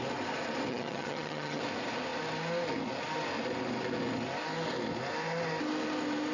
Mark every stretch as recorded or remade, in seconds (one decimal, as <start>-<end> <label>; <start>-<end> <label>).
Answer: 0.0-0.7 recorded; 0.7-1.6 remade; 1.6-6.3 recorded